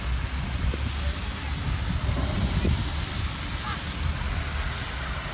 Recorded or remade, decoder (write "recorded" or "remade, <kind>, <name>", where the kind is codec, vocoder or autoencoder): recorded